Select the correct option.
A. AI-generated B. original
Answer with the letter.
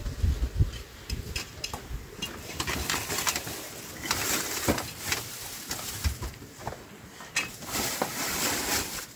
B